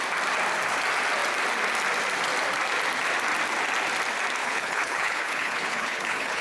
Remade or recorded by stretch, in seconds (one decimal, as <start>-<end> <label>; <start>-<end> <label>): 0.0-4.4 recorded; 4.4-6.4 remade

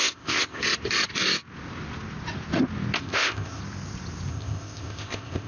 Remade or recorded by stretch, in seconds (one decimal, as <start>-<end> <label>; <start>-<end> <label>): 0.0-0.6 remade; 0.6-3.0 recorded; 3.0-3.6 remade; 3.6-4.3 recorded; 4.3-5.5 remade

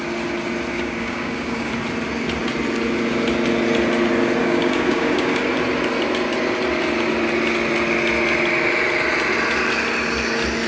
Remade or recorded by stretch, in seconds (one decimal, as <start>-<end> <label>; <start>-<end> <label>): 0.0-0.7 recorded; 0.7-1.7 remade; 1.7-4.4 recorded; 4.4-5.4 remade; 5.4-10.7 recorded

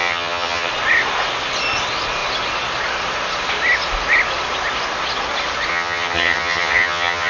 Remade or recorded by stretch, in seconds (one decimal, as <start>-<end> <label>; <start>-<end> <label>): 0.0-0.7 remade; 0.7-5.7 recorded; 5.7-7.3 remade

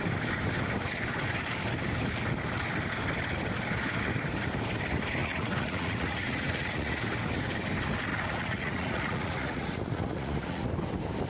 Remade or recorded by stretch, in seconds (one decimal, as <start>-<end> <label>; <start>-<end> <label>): 0.0-5.2 recorded; 5.2-7.0 remade; 7.0-8.1 recorded; 8.1-10.7 remade; 10.7-11.3 recorded